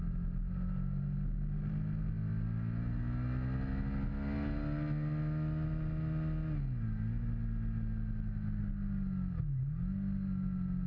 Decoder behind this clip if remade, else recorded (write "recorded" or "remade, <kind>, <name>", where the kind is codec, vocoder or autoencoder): recorded